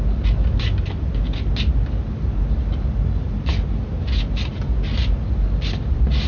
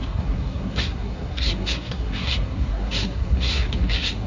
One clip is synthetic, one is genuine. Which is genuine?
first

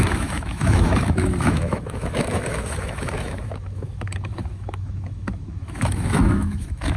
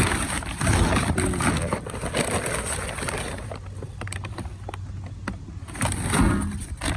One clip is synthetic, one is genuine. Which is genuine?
second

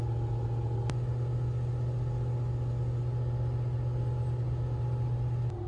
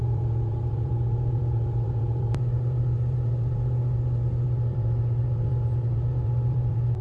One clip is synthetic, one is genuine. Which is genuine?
first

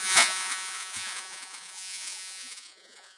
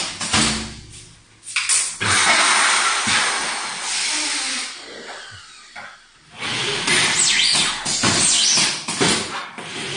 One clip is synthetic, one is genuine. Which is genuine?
second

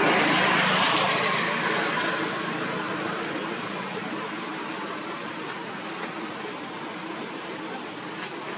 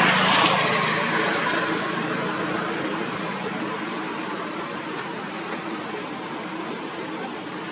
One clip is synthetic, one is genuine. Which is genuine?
second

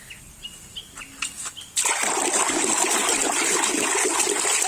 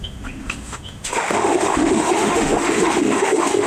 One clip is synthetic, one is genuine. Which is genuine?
first